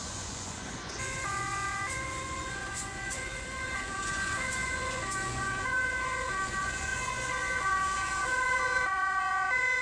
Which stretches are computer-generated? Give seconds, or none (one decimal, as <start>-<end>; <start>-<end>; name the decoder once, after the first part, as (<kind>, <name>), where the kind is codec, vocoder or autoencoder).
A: 0.0-9.8 (vocoder, Vocos)